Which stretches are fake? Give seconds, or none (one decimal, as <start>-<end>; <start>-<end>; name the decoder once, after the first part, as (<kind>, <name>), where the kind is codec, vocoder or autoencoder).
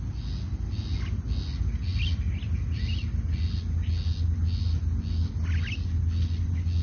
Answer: none